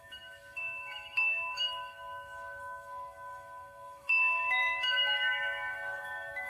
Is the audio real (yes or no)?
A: no